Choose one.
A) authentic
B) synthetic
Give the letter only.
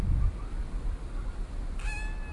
A